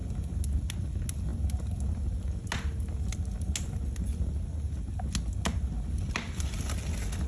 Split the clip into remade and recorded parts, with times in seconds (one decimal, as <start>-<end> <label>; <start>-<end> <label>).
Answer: 0.0-7.3 recorded